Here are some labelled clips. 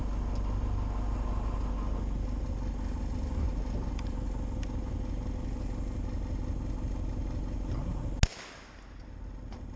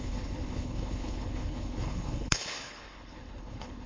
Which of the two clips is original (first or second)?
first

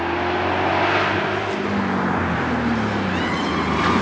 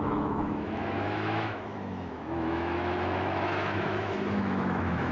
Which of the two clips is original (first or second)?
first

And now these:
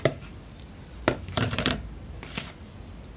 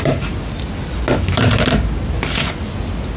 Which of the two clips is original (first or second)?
second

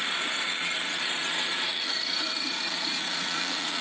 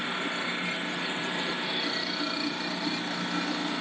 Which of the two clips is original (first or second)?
second